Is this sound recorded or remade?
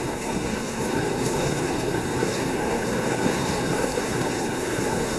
remade